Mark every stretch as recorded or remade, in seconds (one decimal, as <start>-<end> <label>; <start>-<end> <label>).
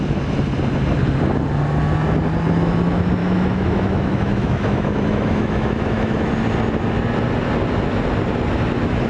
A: 0.0-3.2 recorded; 3.2-6.3 remade; 6.3-9.1 recorded